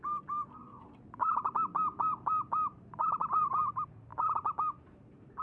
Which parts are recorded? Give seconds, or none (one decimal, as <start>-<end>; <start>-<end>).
0.0-0.6; 3.5-4.1